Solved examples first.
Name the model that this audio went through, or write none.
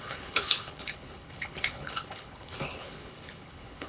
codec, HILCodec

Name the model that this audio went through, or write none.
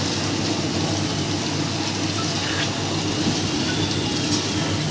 none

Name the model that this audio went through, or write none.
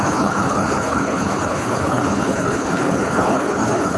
codec, HILCodec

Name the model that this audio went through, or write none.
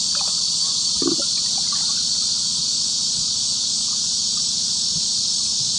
none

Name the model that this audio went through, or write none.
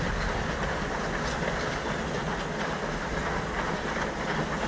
none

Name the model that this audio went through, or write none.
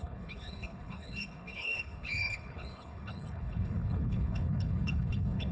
codec, HILCodec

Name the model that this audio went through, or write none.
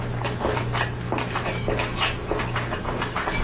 none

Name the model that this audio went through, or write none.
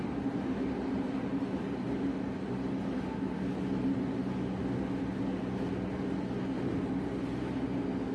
none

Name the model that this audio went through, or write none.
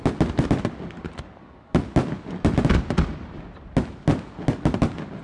none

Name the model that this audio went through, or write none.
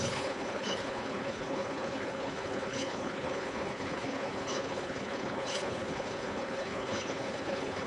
codec, HILCodec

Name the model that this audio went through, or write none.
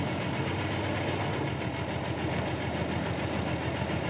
none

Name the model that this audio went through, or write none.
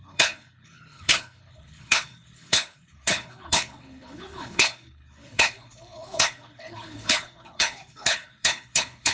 codec, HILCodec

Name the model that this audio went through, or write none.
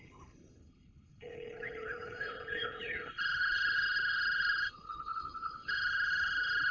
codec, HILCodec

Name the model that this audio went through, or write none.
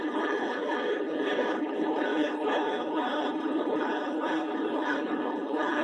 codec, HILCodec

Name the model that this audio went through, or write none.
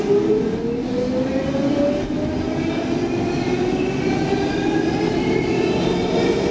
none